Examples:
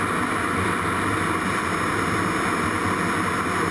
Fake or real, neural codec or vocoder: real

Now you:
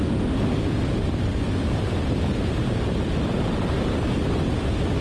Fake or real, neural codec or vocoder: real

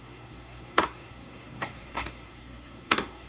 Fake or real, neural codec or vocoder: fake, codec, SNAC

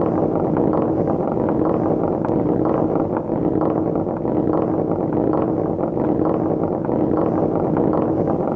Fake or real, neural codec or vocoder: real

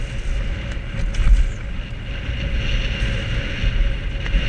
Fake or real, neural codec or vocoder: real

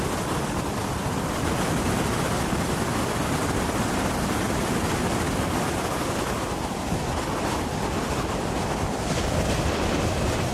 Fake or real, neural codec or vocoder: real